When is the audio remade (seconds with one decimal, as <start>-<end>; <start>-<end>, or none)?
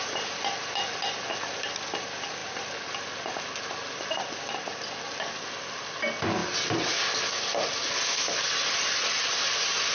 none